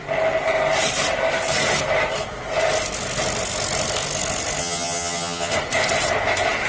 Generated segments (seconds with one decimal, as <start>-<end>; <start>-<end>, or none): 4.6-5.5

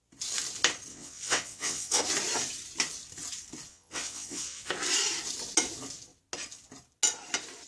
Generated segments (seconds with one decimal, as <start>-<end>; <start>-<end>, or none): 0.9-2.0; 3.7-4.7

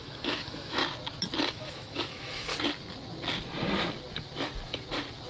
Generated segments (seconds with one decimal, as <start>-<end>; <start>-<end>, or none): 0.0-0.8; 1.5-2.5

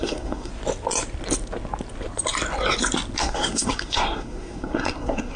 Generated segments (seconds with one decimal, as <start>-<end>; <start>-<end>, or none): 0.0-0.5; 3.2-5.4

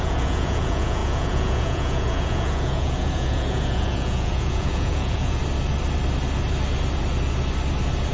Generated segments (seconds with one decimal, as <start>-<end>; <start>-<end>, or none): 0.0-5.4

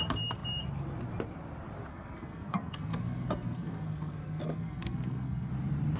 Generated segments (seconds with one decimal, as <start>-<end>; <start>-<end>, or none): 1.9-5.5

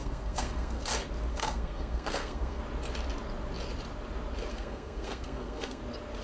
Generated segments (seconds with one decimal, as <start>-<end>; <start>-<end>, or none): 0.0-0.9; 1.3-2.6; 4.5-5.8

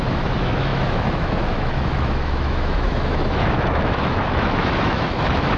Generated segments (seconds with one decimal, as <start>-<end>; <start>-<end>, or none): 0.0-5.6